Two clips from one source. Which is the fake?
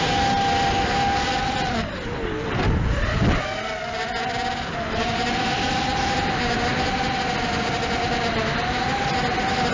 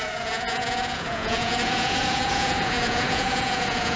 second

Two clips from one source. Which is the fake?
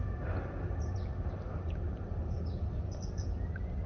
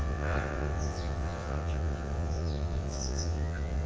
second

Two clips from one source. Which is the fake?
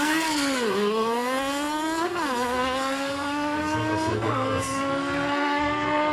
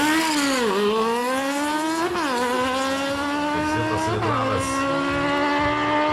first